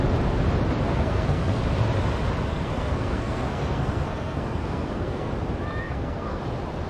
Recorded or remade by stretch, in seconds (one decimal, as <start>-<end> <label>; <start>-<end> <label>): 0.0-0.9 recorded; 0.9-1.6 remade; 1.6-2.5 recorded; 2.5-5.3 remade; 5.3-5.8 recorded; 5.8-6.4 remade; 6.4-6.9 recorded